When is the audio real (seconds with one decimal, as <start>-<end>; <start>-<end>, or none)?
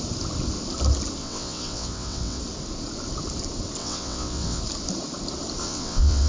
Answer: 0.0-1.2; 2.4-3.8; 4.6-5.6